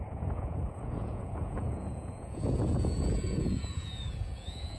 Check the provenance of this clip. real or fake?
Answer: fake